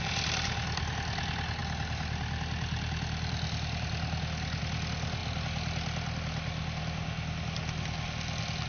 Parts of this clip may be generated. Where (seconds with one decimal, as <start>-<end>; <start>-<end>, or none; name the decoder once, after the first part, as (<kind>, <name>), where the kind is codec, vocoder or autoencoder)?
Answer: none